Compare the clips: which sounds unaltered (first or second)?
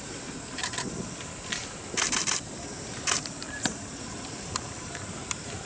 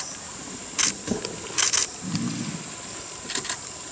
second